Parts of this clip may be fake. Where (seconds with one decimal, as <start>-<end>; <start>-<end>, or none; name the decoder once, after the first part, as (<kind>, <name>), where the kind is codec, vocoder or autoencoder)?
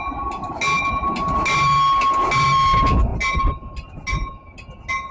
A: none